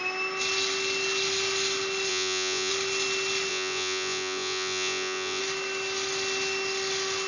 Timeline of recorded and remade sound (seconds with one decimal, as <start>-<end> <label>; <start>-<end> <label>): 0.0-2.1 recorded; 2.1-2.7 remade; 2.7-3.5 recorded; 3.5-5.4 remade; 5.4-7.3 recorded